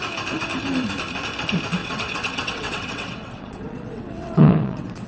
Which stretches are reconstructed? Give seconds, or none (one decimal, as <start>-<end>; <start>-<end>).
1.8-5.1